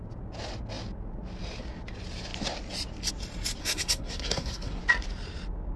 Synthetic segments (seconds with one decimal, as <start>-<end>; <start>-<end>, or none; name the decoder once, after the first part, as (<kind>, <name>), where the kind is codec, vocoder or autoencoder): 3.6-4.8 (codec, SNAC)